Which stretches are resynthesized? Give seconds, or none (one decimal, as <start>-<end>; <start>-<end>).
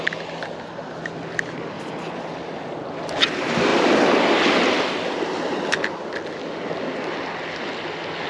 none